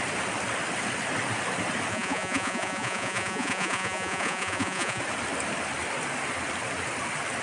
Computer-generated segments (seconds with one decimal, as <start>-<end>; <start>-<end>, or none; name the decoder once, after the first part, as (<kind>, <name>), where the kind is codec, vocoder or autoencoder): 1.9-5.0 (vocoder, Vocos)